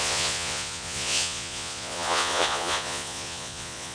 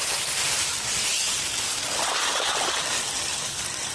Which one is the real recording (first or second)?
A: second